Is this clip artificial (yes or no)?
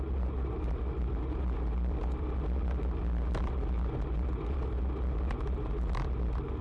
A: no